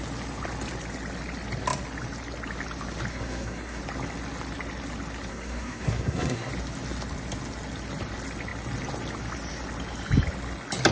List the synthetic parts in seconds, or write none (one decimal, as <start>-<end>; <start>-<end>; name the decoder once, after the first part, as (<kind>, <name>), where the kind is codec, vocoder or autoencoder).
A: 3.1-3.8 (codec, SNAC); 5.3-6.5